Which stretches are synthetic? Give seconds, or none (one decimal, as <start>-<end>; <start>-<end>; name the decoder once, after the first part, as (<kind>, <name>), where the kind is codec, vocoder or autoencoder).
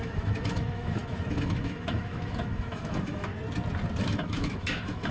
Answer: 0.0-3.3 (autoencoder, DAC-VAE); 4.0-5.1